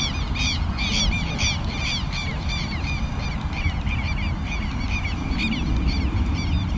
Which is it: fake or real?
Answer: real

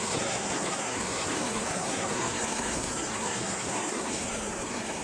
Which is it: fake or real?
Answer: fake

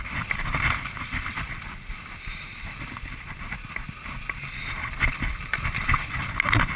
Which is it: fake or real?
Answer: real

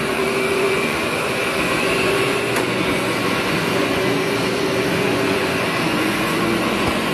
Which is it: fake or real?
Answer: fake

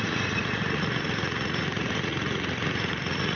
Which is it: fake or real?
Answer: fake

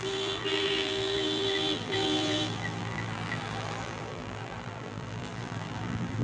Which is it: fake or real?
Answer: fake